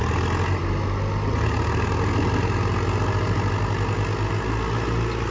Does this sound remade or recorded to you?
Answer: recorded